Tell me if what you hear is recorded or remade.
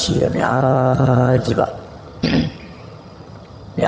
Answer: remade